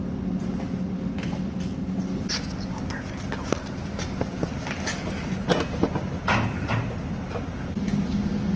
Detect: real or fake real